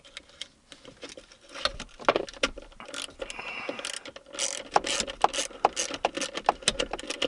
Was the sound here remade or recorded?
recorded